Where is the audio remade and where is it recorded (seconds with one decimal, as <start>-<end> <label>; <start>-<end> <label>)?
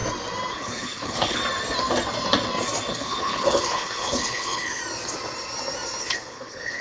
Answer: 0.0-0.5 recorded; 0.5-1.4 remade; 1.4-2.9 recorded; 2.9-4.8 remade; 4.8-6.0 recorded; 6.0-6.8 remade